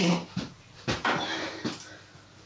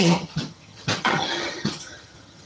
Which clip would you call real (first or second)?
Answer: first